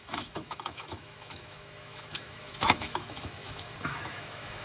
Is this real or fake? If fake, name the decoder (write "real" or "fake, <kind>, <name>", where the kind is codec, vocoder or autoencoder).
fake, autoencoder, DAC-VAE